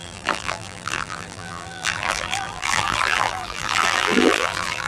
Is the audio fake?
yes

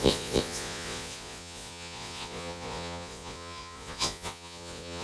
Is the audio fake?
yes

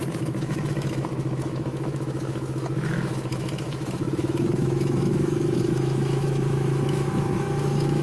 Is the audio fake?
yes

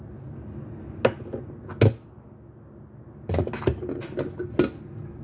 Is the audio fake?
no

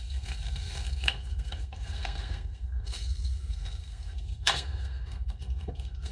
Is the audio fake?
yes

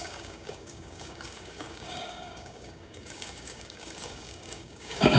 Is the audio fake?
yes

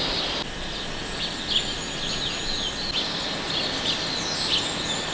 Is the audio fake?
no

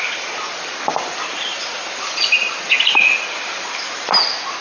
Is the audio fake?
no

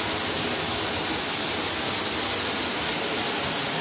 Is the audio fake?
no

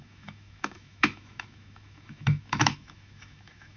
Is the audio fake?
yes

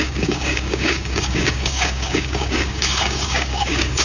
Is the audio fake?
yes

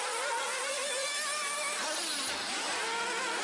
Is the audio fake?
no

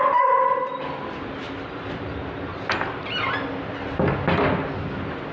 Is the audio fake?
no